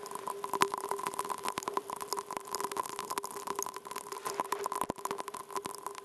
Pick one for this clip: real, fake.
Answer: real